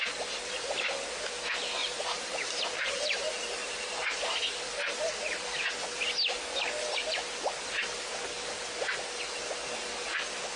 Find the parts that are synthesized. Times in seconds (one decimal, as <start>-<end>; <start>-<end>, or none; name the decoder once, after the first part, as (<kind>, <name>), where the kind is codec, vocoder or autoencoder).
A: 1.8-5.7 (vocoder, BigVGAN v2)